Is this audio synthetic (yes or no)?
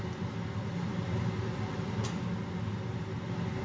no